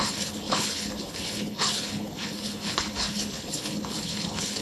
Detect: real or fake fake